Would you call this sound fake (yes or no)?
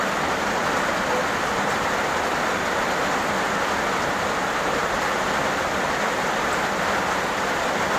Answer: no